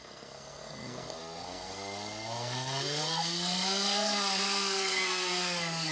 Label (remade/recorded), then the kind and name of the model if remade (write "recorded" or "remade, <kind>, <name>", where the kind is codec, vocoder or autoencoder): remade, codec, SNAC